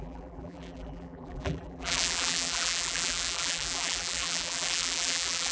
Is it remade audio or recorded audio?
remade